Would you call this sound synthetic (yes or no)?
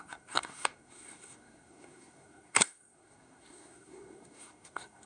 yes